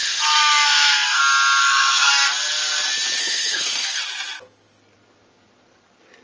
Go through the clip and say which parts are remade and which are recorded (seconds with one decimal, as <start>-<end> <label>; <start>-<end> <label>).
0.0-1.2 remade; 1.2-1.6 recorded; 1.6-2.1 remade; 2.1-3.2 recorded; 3.2-4.0 remade; 4.0-6.2 recorded